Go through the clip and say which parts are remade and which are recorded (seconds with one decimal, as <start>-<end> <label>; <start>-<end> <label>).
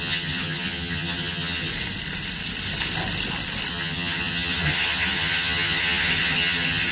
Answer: 0.0-1.7 remade; 1.7-3.7 recorded; 3.7-6.9 remade